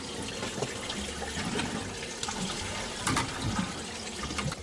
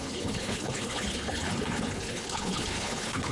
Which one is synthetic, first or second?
second